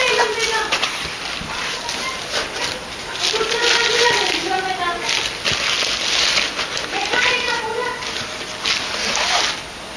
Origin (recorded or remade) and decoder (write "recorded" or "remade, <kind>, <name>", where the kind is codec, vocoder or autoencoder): recorded